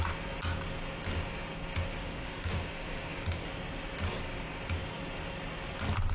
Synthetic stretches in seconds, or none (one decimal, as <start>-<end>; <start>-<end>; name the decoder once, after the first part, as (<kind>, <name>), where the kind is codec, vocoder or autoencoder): 1.9-3.5 (codec, DAC)

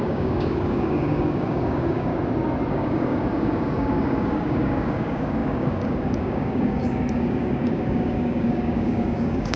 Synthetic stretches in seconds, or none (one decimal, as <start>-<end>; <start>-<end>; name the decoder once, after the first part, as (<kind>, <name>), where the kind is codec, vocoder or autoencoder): 0.0-2.1 (codec, DAC); 2.7-9.6

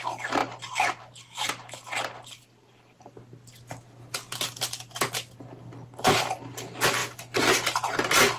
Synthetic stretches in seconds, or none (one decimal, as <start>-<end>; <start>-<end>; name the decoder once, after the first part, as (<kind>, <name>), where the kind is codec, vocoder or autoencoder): none

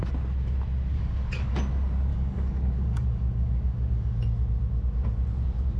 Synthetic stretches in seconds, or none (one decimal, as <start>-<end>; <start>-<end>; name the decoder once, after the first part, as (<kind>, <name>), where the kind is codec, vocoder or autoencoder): 0.9-1.6 (codec, DAC); 2.1-4.2

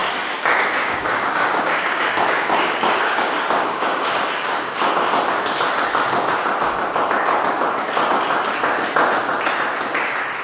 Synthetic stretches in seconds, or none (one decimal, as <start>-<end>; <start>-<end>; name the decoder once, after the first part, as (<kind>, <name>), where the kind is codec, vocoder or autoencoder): 0.0-4.9 (codec, DAC)

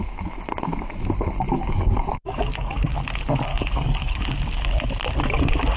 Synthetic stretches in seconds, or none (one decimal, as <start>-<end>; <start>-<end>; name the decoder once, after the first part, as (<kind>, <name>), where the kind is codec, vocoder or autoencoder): 1.5-2.8 (codec, DAC); 3.5-4.2